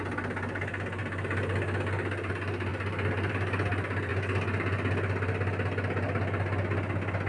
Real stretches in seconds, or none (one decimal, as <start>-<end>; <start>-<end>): 0.0-7.3